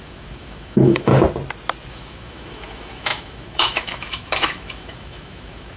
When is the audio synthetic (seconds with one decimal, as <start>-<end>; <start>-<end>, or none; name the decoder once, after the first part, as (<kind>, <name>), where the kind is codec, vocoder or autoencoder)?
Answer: 0.0-1.1 (autoencoder, DAC-VAE); 1.9-5.8